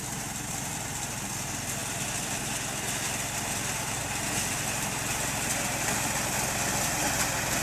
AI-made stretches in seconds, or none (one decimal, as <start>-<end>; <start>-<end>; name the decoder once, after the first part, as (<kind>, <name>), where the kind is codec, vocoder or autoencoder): none